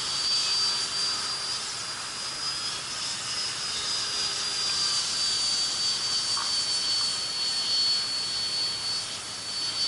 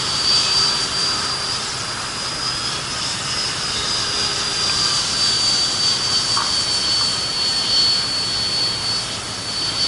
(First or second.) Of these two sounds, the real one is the first